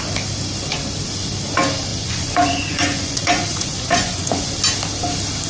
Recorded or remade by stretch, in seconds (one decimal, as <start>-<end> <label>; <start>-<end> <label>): 0.0-1.9 recorded; 1.9-4.5 remade; 4.5-5.5 recorded